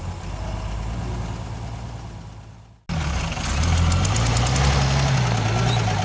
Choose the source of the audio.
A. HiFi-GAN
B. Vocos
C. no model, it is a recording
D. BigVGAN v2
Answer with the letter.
C